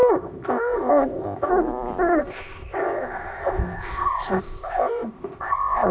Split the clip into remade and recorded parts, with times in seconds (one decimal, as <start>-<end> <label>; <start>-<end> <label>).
0.0-1.5 remade; 1.5-2.2 recorded; 2.2-5.9 remade